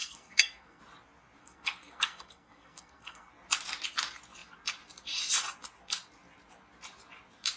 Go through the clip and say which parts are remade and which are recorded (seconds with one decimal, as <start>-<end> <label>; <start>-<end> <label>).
0.0-0.8 remade; 0.8-1.4 recorded; 1.4-3.3 remade; 3.3-7.6 recorded